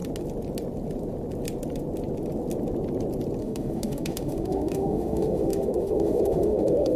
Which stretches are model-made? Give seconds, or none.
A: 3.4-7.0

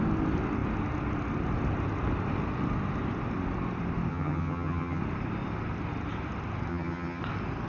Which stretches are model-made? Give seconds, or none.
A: 4.1-5.0; 6.7-7.2

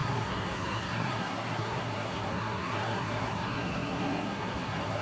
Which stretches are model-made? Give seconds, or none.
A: 0.0-5.0

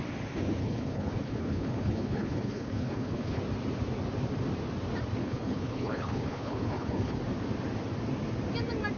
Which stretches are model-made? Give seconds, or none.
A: 0.6-3.4; 5.2-7.2